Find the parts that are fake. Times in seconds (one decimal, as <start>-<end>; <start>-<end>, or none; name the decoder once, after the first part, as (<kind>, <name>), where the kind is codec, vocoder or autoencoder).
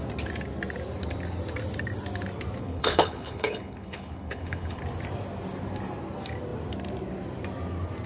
2.6-4.8 (codec, HILCodec)